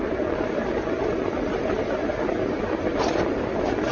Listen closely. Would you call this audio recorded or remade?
recorded